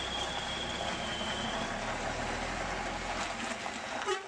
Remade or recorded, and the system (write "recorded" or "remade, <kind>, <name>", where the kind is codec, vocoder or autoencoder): recorded